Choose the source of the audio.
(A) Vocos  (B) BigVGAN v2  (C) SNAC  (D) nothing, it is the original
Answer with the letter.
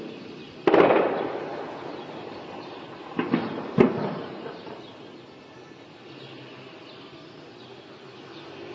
D